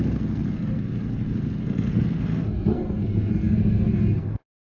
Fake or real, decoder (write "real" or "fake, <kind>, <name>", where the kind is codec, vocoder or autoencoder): fake, codec, SNAC